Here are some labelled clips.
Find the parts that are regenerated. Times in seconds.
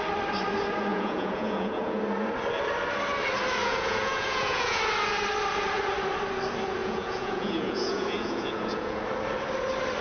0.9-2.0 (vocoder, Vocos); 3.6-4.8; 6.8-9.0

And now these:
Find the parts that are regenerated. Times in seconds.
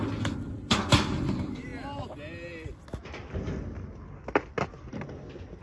none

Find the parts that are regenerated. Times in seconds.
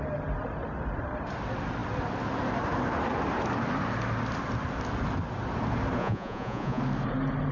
6.0-6.8 (vocoder, Vocos)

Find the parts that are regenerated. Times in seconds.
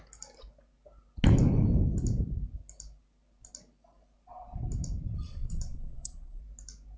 5.2-6.4 (vocoder, Vocos)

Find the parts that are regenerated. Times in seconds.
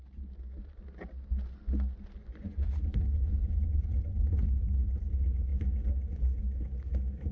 2.2-4.5 (vocoder, Vocos)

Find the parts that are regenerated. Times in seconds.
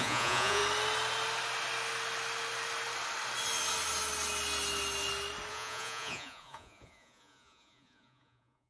0.0-0.6 (vocoder, Vocos); 5.5-8.7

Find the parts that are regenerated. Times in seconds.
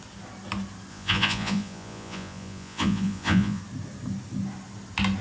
0.9-3.6 (vocoder, Vocos)